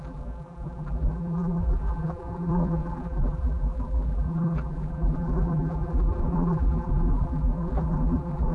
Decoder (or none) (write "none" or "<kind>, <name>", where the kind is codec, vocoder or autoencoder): vocoder, BigVGAN v2